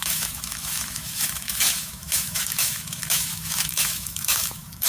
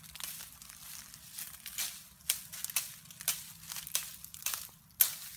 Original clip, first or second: second